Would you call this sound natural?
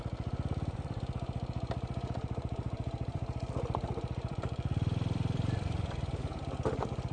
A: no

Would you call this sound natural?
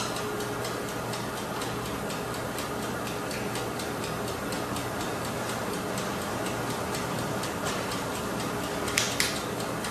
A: yes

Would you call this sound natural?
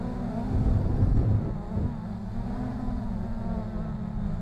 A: yes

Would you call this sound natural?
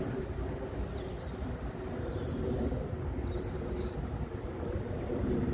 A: yes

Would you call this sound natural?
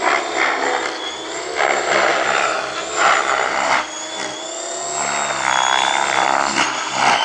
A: yes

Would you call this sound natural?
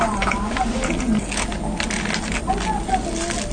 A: yes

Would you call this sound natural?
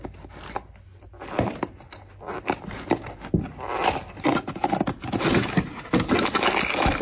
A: yes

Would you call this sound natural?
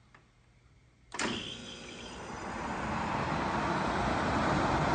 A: yes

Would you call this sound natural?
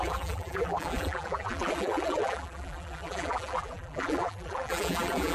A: no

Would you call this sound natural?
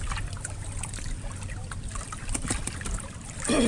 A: no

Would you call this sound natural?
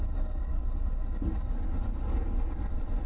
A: yes